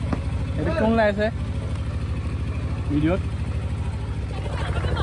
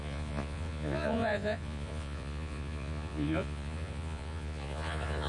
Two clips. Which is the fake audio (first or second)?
second